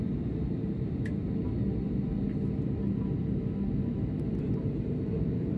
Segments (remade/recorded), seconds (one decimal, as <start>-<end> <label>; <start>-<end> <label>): 0.0-1.2 remade; 1.2-4.6 recorded; 4.6-5.6 remade